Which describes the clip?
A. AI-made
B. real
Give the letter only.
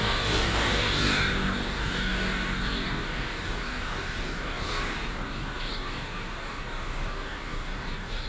A